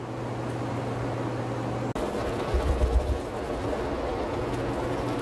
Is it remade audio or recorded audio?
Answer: recorded